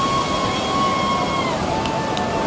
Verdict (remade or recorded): recorded